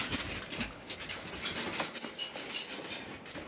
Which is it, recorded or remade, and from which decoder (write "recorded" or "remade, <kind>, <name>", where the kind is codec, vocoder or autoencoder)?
recorded